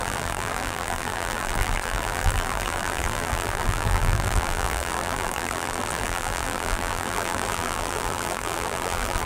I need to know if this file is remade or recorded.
remade